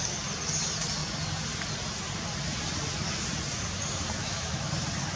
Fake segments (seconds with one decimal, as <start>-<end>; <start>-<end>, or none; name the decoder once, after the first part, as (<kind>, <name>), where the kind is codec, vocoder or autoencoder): 4.2-4.7 (autoencoder, DAC-VAE)